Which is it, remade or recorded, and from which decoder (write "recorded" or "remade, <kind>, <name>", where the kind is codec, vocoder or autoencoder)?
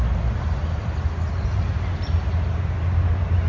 recorded